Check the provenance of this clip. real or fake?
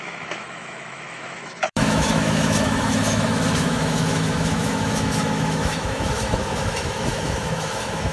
fake